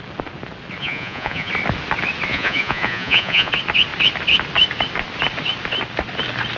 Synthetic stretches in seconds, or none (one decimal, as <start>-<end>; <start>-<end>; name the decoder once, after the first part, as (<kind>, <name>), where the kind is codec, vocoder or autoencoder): 0.8-1.5 (vocoder, Vocos); 2.3-3.5